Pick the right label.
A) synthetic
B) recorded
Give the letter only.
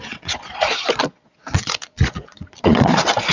A